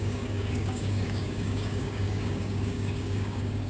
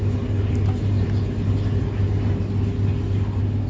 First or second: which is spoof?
first